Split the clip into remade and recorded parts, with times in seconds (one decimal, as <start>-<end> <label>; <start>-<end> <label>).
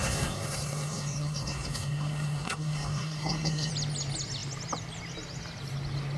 0.0-3.7 remade; 3.7-6.2 recorded